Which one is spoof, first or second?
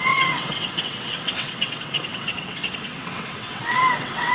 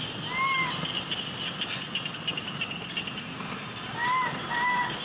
first